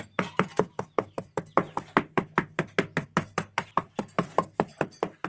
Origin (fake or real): fake